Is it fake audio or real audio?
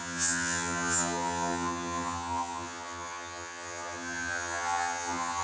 fake